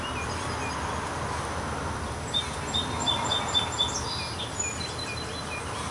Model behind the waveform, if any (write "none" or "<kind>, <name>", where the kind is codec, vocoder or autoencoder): none